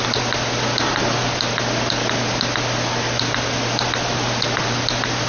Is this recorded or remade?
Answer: recorded